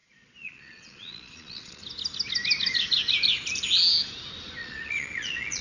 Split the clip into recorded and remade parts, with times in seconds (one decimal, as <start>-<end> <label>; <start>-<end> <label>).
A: 0.0-1.8 remade; 1.8-4.6 recorded; 4.6-5.6 remade